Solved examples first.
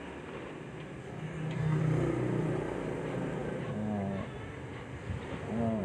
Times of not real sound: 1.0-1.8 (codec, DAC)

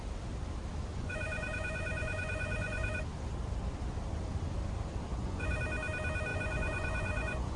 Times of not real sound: 0.9-3.0 (vocoder, Vocos); 5.1-5.6; 6.3-7.6

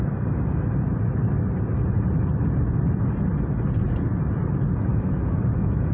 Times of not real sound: 4.9-5.9 (autoencoder, DAC-VAE)

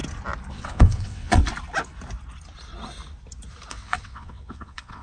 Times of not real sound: 0.5-1.4 (vocoder, WaveNeXt); 3.7-5.0

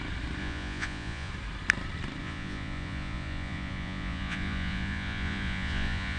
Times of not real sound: 0.4-1.3 (vocoder, Vocos); 2.2-6.2

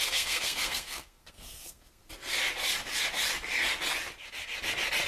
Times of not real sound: 0.0-2.0 (codec, SNAC)

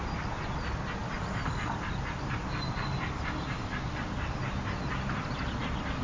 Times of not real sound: none

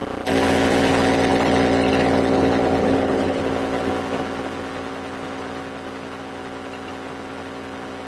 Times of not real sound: 2.8-3.4 (codec, HILCodec)